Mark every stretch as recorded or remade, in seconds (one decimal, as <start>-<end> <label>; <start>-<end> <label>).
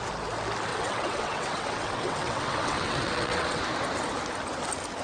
0.0-0.7 recorded; 0.7-3.6 remade; 3.6-5.0 recorded